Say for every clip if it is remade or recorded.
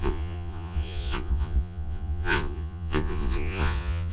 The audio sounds remade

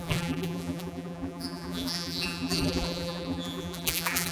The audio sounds remade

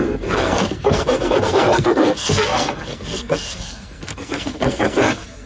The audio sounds remade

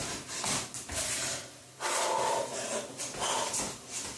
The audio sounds recorded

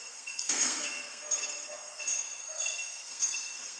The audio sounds remade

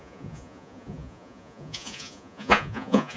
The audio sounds remade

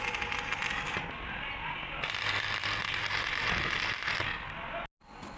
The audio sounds recorded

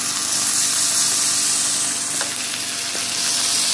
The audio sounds recorded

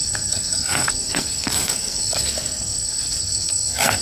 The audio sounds remade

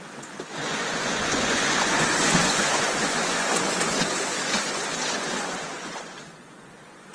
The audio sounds remade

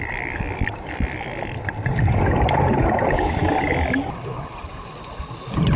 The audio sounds recorded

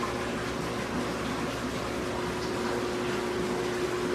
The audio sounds recorded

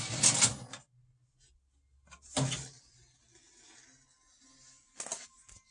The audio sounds recorded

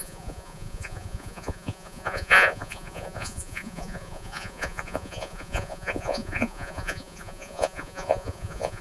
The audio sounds remade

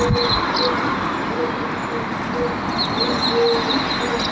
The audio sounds recorded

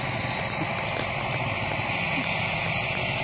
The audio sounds recorded